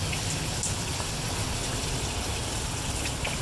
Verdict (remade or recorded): recorded